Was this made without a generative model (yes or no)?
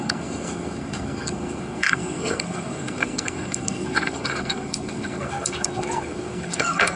no